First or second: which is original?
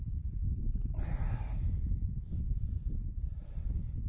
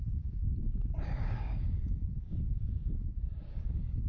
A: first